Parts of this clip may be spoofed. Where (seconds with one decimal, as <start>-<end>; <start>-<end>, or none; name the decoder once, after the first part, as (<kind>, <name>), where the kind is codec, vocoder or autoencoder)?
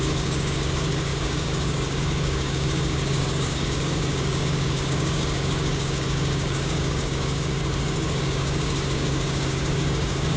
0.0-10.4 (codec, DAC)